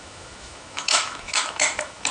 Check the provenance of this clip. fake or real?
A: fake